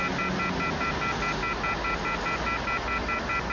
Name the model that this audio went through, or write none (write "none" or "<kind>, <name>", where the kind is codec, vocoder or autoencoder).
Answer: none